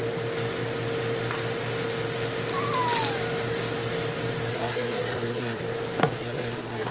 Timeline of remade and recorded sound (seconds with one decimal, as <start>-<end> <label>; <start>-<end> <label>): 0.0-4.5 recorded; 4.5-5.6 remade; 5.6-6.0 recorded; 6.0-6.9 remade